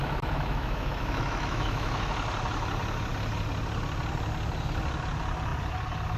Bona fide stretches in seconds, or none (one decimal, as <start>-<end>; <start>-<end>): 2.1-6.2

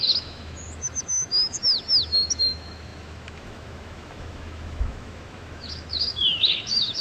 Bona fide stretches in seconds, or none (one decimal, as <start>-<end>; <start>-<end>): none

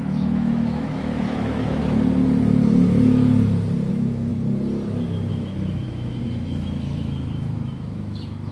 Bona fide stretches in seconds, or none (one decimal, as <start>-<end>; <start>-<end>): 1.8-3.9; 4.3-5.3

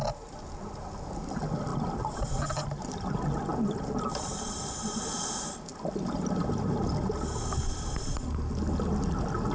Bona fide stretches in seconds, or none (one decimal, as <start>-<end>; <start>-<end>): 0.0-9.5

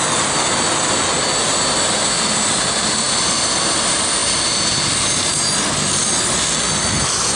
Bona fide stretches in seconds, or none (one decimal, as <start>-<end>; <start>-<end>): 0.0-7.4